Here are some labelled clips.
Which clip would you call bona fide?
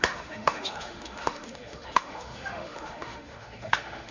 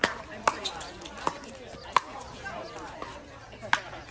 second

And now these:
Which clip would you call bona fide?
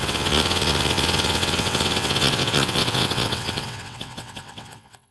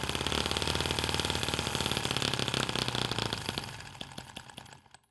second